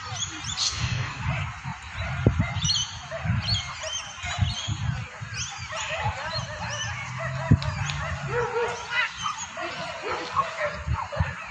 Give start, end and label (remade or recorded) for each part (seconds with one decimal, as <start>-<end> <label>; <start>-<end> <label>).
0.0-0.6 recorded; 0.6-1.2 remade; 1.2-11.5 recorded